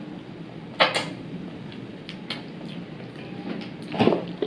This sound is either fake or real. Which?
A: real